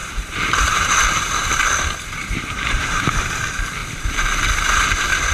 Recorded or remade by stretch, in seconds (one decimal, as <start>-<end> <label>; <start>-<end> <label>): 0.0-1.6 remade; 1.6-2.2 recorded; 2.2-3.2 remade; 3.2-5.3 recorded